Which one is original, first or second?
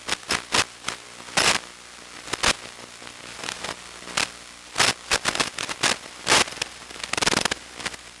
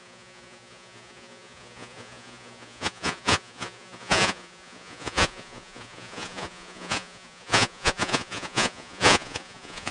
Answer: first